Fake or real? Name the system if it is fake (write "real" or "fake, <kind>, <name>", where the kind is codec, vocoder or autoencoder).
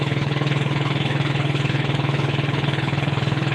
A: fake, codec, HILCodec